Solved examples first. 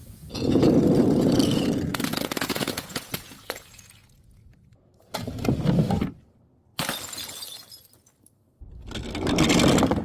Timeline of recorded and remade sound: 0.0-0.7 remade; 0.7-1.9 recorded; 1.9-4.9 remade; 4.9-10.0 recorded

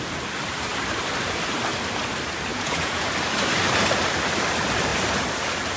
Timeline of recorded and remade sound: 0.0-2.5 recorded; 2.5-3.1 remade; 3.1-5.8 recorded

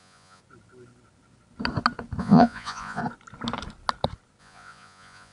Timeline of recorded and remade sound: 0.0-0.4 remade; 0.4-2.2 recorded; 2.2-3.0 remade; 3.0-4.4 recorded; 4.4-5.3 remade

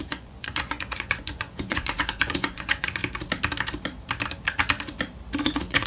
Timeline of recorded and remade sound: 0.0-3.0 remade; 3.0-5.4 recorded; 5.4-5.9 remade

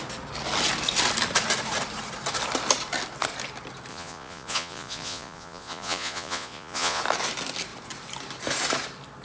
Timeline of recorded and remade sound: 0.0-3.9 recorded; 3.9-7.0 remade; 7.0-9.2 recorded

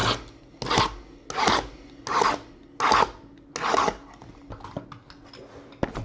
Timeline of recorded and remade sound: 0.0-6.0 recorded

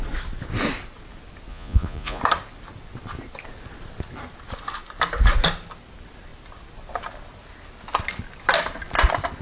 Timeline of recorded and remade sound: 0.0-1.5 recorded; 1.5-2.2 remade; 2.2-9.4 recorded

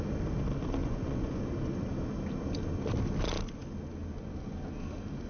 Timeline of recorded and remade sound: 0.0-0.8 recorded; 0.8-1.4 remade; 1.4-5.3 recorded